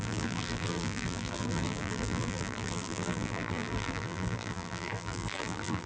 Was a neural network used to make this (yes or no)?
yes